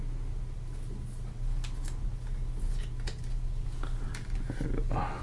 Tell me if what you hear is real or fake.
real